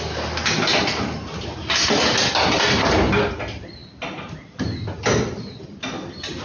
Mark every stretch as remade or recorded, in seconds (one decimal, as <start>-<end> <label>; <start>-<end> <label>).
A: 0.0-6.4 recorded